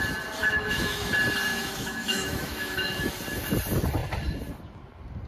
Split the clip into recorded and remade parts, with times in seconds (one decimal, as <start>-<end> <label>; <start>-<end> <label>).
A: 0.0-0.4 recorded; 0.4-1.1 remade; 1.1-1.5 recorded; 1.5-3.1 remade; 3.1-5.3 recorded